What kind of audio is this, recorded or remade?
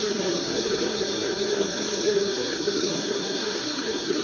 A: remade